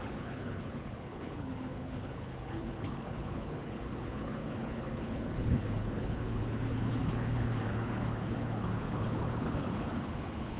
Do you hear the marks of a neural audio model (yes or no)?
yes